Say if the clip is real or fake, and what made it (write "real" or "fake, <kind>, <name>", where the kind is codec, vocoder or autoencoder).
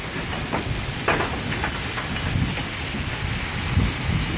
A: real